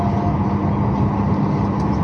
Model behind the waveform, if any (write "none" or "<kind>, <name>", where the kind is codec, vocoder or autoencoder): none